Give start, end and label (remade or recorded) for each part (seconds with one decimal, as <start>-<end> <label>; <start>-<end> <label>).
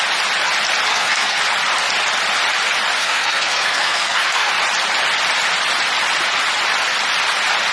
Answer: 0.0-0.9 recorded; 0.9-1.4 remade; 1.4-3.0 recorded; 3.0-4.5 remade; 4.5-7.7 recorded